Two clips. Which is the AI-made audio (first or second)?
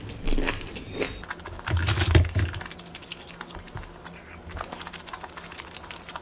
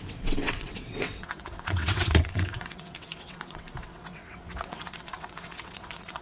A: second